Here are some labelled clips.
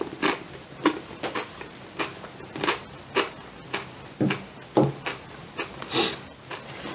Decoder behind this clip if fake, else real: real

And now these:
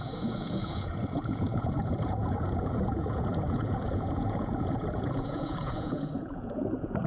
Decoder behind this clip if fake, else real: fake, vocoder, Vocos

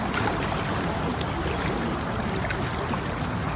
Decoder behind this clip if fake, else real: real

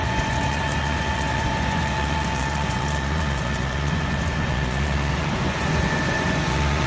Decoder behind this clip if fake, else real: fake, vocoder, Vocos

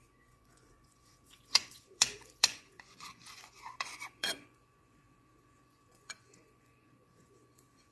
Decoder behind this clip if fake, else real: fake, vocoder, Vocos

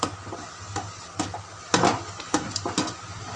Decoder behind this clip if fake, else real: real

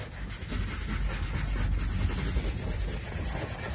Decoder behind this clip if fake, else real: real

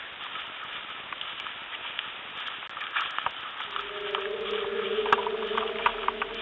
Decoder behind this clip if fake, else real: real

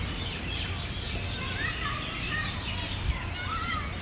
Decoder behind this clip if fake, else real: real